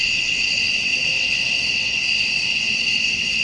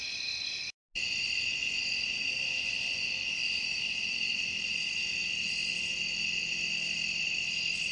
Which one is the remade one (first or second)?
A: first